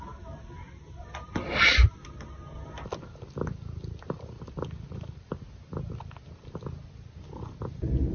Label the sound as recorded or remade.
recorded